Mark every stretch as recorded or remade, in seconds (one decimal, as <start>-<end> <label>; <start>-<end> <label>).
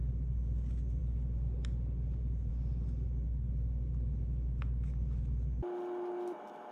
0.0-6.7 recorded